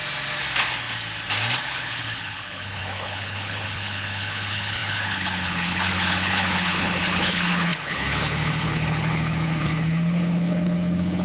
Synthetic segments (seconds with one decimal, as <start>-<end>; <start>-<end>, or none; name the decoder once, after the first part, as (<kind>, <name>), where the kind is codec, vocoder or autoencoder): 1.6-11.2 (codec, HILCodec)